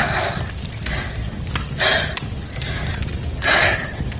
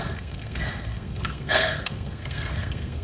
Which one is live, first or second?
first